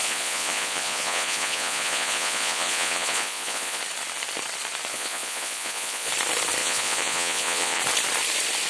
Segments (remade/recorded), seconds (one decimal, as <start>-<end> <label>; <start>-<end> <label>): 0.0-3.8 remade; 3.8-4.9 recorded; 4.9-6.1 remade; 6.1-6.6 recorded; 6.6-7.8 remade; 7.8-8.7 recorded